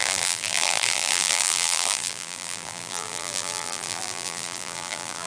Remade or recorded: remade